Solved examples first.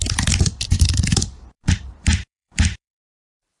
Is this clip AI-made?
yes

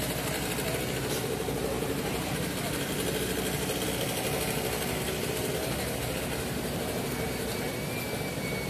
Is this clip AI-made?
no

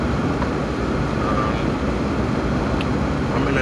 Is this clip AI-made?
no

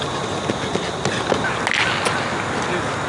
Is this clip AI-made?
no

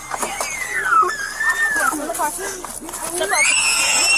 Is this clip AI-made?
no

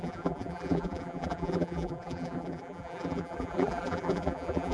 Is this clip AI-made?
yes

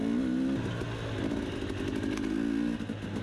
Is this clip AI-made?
no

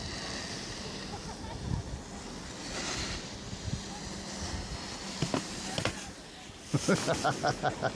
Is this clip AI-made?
no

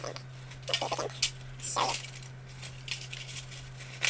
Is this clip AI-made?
no